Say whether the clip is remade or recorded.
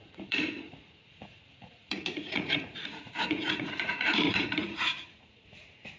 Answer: remade